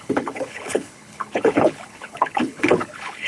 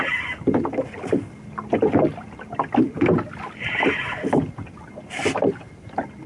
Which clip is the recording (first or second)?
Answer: second